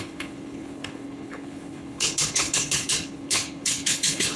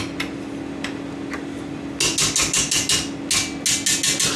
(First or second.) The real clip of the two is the second